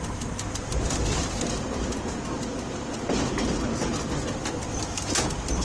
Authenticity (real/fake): real